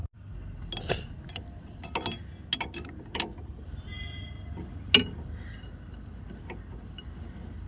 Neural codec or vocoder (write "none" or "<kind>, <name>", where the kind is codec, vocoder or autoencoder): none